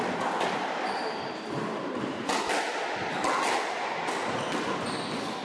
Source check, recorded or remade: recorded